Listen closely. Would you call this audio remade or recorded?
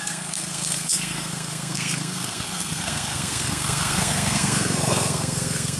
remade